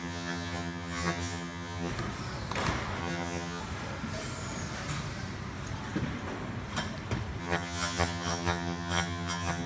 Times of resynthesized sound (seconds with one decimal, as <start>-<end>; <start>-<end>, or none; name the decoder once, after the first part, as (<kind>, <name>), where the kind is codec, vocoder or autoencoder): 0.0-1.9 (vocoder, HiFi-GAN); 3.0-3.6; 7.4-9.7